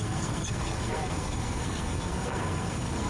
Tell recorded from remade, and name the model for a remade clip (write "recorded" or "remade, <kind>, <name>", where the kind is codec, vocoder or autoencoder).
remade, codec, SNAC